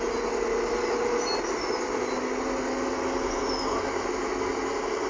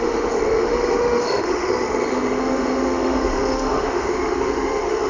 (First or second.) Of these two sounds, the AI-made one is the second